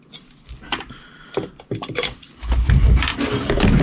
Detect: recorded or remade recorded